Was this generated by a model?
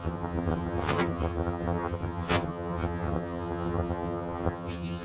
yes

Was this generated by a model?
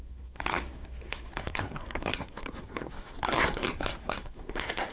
yes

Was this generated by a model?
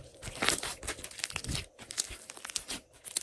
no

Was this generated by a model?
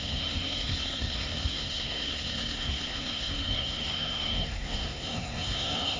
yes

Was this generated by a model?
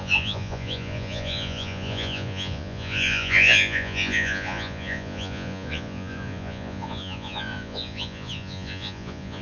yes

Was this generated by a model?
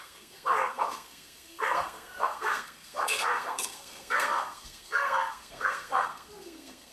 yes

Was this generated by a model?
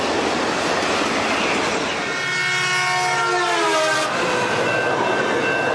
no